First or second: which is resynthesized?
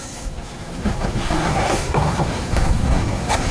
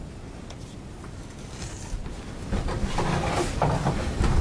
first